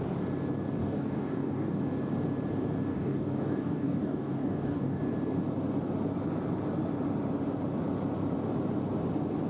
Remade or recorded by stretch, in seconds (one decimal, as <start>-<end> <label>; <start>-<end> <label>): 0.0-0.8 recorded; 0.8-1.8 remade; 1.8-2.9 recorded; 2.9-5.0 remade; 5.0-9.5 recorded